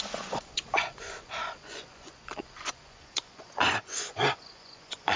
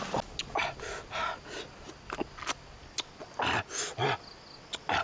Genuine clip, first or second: second